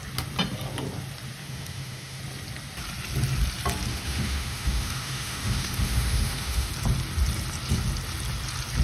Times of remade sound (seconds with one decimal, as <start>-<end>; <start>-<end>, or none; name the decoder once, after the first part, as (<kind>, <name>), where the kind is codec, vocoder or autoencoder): 1.4-2.2 (autoencoder, DAC-VAE); 3.9-6.7